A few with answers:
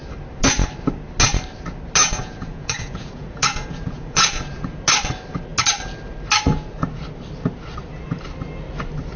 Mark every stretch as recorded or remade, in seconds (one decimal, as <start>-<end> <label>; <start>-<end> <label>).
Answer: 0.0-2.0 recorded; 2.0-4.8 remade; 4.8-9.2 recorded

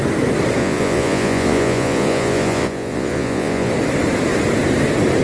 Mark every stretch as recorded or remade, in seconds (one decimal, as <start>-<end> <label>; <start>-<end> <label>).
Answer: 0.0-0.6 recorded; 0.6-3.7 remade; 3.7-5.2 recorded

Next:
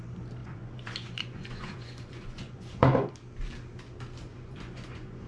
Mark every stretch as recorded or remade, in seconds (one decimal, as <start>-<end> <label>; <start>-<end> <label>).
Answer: 0.0-0.4 recorded; 0.4-3.1 remade; 3.1-4.3 recorded; 4.3-5.3 remade

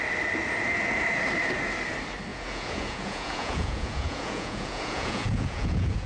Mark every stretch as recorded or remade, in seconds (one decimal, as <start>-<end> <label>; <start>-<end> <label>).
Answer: 0.0-2.3 recorded; 2.3-6.1 remade

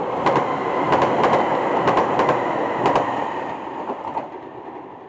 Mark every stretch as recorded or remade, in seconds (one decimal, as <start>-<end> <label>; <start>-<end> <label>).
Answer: 0.0-5.1 recorded